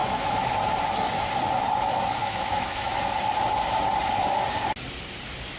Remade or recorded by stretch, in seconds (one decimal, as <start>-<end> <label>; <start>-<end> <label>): 0.0-0.5 remade; 0.5-2.2 recorded; 2.2-2.9 remade; 2.9-5.6 recorded